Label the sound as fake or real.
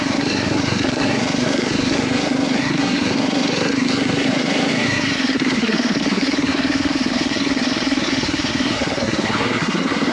fake